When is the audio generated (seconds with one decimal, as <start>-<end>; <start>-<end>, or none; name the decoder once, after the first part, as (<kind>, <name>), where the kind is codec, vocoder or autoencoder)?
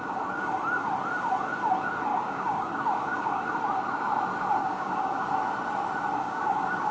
0.0-0.5 (codec, DAC); 2.1-3.4; 4.6-5.3; 6.2-6.9